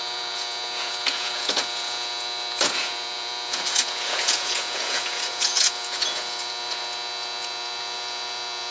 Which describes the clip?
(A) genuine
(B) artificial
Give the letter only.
B